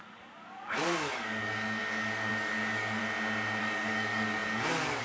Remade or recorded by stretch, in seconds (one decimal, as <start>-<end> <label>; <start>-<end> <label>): 0.0-3.0 remade; 3.0-3.6 recorded; 3.6-5.0 remade

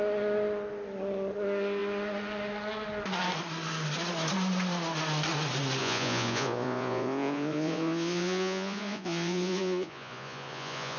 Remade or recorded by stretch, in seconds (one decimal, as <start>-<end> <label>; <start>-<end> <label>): 0.0-5.8 recorded; 5.8-11.0 remade